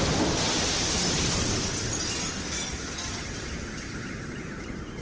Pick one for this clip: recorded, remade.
recorded